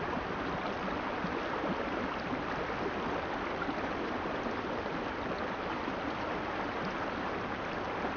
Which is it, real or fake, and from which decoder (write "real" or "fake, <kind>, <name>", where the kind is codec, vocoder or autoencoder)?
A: real